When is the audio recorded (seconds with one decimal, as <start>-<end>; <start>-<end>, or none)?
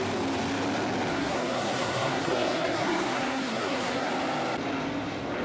0.0-1.1; 4.1-5.4